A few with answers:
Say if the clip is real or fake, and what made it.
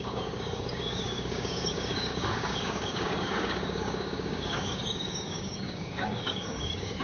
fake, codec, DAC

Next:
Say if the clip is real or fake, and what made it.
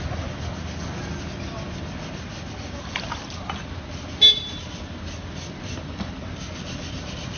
real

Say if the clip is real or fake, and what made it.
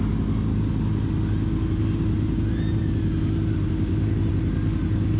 real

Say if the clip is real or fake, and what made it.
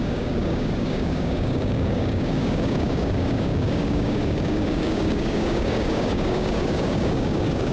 fake, codec, DAC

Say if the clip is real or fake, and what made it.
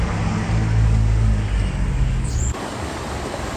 fake, codec, DAC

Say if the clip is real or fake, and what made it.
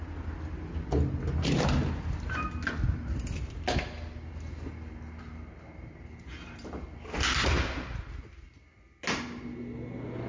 real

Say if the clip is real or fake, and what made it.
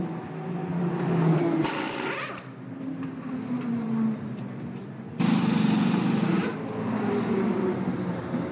real